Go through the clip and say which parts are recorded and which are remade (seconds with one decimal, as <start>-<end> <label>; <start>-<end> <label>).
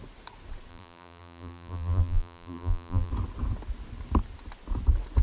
0.0-0.7 recorded; 0.7-3.1 remade; 3.1-5.2 recorded